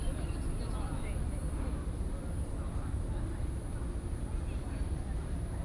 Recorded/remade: recorded